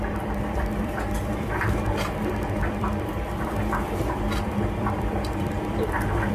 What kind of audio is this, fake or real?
fake